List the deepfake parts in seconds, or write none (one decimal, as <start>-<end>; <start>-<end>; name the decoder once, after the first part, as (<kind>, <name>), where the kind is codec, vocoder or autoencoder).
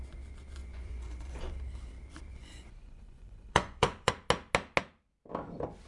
0.6-1.5 (vocoder, Vocos); 2.3-4.1